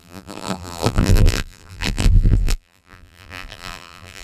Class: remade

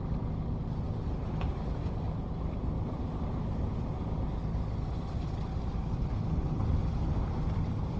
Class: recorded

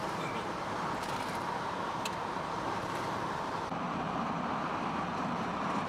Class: remade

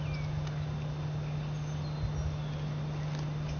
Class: recorded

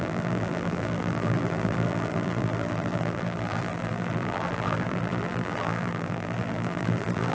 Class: remade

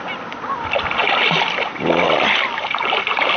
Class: recorded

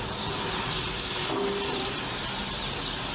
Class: recorded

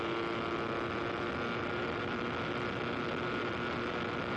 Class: recorded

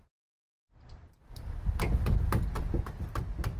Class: recorded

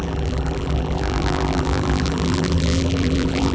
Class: remade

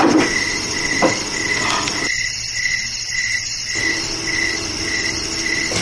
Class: recorded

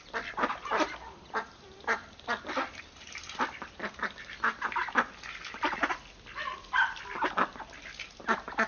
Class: remade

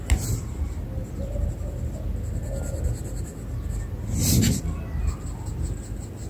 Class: recorded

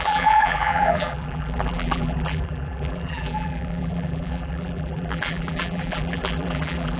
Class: remade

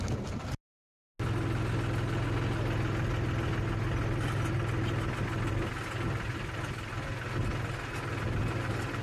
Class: recorded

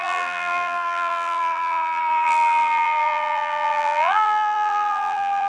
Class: remade